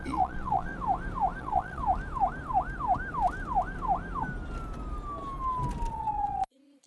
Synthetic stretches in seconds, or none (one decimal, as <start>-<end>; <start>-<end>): 0.0-0.7; 1.4-1.8; 5.9-6.9